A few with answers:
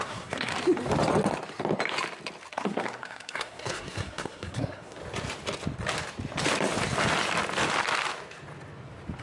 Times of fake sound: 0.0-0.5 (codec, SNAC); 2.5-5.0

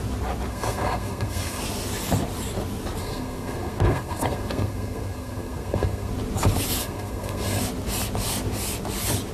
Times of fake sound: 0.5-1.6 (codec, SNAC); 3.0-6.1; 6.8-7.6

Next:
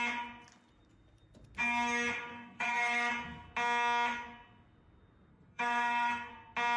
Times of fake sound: 2.3-3.1 (codec, SNAC); 5.3-6.3